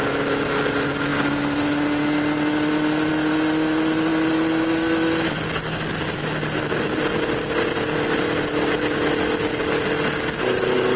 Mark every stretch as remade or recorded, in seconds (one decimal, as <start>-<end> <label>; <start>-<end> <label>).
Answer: 0.0-11.0 recorded